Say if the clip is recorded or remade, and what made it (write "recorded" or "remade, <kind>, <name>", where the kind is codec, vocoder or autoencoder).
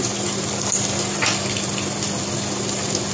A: recorded